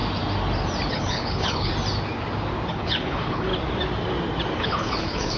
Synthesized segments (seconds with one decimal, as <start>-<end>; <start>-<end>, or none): 0.9-1.7; 2.7-3.5; 4.6-5.4